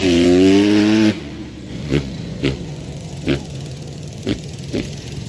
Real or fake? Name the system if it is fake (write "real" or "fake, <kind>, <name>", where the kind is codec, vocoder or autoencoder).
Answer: fake, vocoder, Vocos